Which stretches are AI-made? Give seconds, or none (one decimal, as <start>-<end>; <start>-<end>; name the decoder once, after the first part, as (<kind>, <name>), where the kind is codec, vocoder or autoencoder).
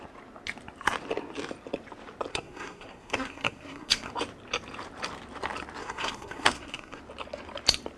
2.3-4.1 (codec, SNAC); 5.8-7.0